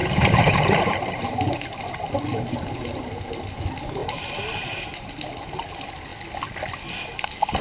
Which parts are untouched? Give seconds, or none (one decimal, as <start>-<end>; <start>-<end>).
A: 1.8-4.0; 5.1-7.6